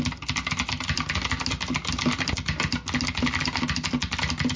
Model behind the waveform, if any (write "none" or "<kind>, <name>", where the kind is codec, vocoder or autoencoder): none